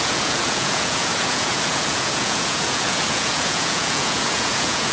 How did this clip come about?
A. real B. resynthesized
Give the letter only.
B